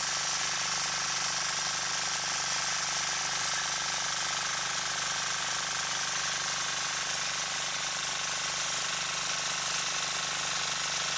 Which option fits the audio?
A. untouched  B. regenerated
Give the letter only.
A